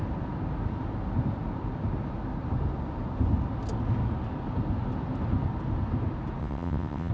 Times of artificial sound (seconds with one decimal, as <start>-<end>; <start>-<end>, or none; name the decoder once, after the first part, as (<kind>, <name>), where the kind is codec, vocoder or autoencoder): 6.4-7.1 (vocoder, WaveNeXt)